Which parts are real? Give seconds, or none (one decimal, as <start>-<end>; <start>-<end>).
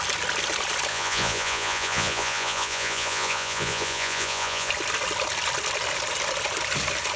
0.0-0.9; 4.7-7.2